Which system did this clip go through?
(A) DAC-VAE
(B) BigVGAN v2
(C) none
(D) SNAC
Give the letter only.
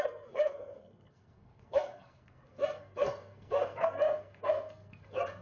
D